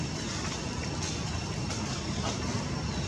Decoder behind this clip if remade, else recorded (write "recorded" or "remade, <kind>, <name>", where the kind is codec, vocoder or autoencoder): recorded